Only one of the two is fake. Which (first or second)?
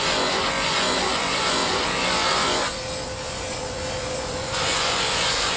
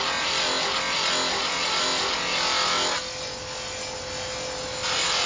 first